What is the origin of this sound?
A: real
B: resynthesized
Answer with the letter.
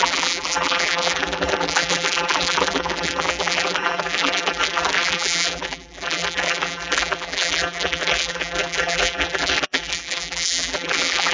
B